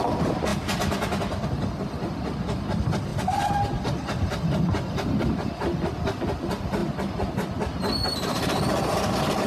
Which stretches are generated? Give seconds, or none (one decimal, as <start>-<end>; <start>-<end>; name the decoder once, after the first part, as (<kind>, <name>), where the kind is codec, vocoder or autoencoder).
6.8-7.3 (vocoder, BigVGAN v2); 7.7-9.5